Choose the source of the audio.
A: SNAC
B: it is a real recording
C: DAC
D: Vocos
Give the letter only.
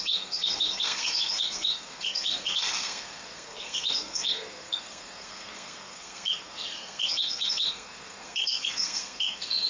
A